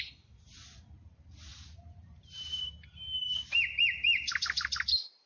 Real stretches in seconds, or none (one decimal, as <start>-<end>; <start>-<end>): 0.0-1.5; 2.6-5.3